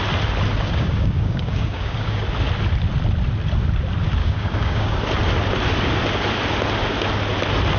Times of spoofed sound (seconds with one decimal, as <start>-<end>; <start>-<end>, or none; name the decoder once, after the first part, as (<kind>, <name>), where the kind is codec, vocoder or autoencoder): 0.6-2.2 (codec, DAC); 4.2-5.0